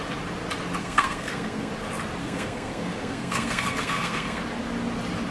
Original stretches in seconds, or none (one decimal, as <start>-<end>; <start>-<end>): 0.0-0.8; 1.7-2.2; 4.4-5.3